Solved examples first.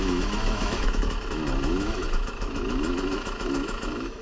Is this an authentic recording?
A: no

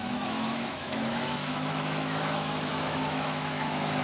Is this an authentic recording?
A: no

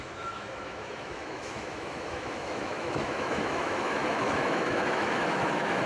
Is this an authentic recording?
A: no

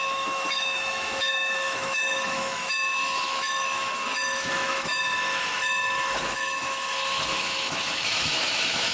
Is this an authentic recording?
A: no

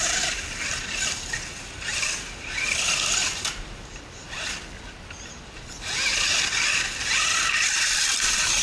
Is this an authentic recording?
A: yes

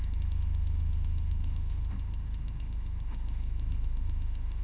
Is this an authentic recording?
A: no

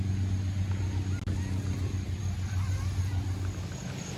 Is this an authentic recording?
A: yes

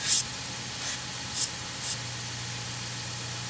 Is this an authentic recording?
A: yes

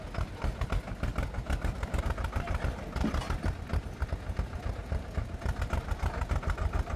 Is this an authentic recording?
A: yes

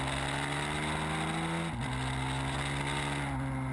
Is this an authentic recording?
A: yes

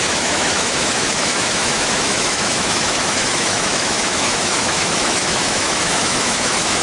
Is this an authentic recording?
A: no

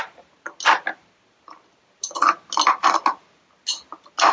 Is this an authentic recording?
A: yes